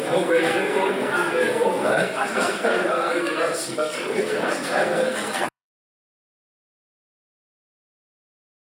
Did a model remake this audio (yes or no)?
yes